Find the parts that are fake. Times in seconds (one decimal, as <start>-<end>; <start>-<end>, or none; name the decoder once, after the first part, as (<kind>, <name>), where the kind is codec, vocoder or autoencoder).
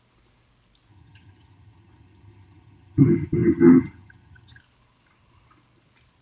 0.9-4.6 (vocoder, HiFi-GAN)